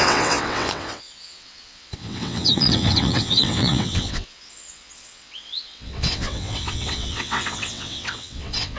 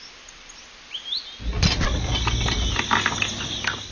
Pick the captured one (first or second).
second